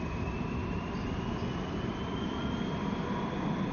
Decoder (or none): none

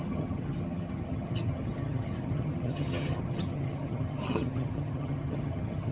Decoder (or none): vocoder, HiFi-GAN